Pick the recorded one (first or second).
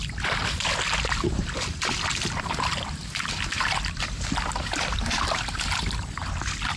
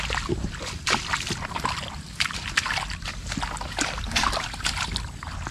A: second